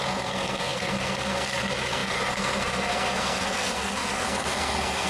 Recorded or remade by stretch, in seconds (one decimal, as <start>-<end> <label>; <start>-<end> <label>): 0.0-5.1 remade